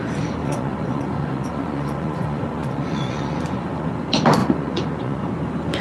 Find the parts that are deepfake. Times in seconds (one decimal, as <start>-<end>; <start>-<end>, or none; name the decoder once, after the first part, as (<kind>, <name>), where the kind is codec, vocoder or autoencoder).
0.4-3.9 (vocoder, Vocos); 4.4-5.3